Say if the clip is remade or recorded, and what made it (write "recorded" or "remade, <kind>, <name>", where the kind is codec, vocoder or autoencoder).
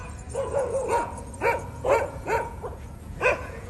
remade, vocoder, Vocos